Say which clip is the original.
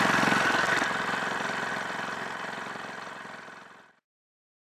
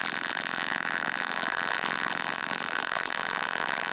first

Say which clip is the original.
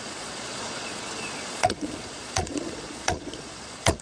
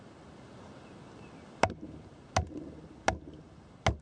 second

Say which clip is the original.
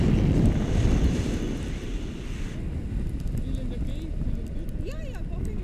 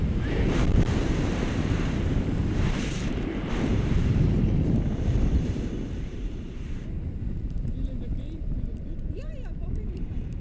first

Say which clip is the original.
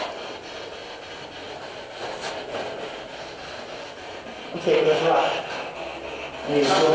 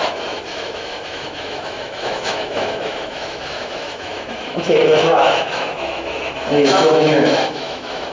first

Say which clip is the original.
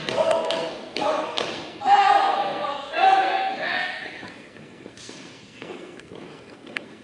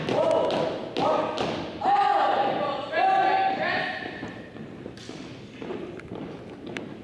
second